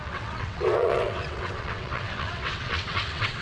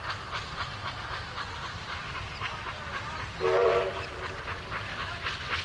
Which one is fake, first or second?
first